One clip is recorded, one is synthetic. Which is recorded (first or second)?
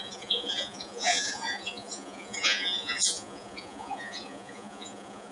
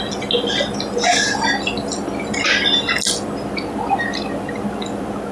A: second